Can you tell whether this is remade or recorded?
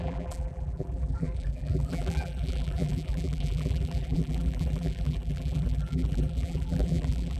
remade